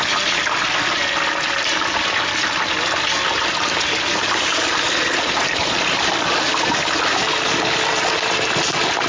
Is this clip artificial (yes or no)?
no